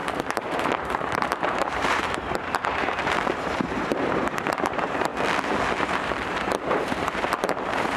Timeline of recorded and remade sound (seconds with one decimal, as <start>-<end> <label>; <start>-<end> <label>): 0.0-5.1 remade; 5.1-5.8 recorded; 5.8-8.0 remade

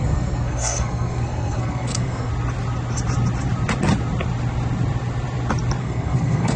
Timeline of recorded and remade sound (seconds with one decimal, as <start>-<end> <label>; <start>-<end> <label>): 0.0-2.3 remade; 2.3-5.8 recorded; 5.8-6.6 remade